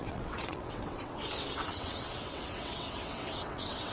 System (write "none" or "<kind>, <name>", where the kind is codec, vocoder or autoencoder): vocoder, WaveNeXt